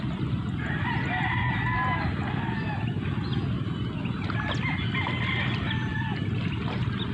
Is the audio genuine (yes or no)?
yes